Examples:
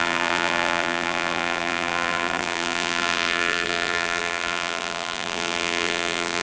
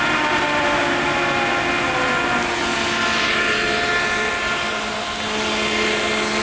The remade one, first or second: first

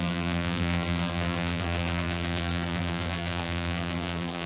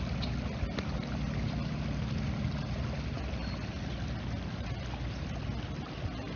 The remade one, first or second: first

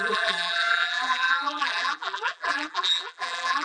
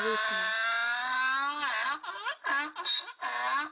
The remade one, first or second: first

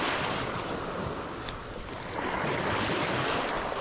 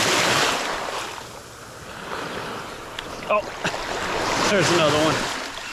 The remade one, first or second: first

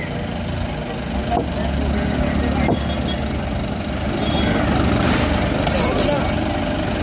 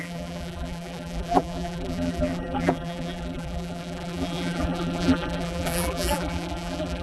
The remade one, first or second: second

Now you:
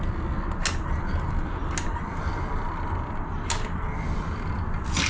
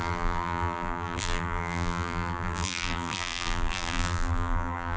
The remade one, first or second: second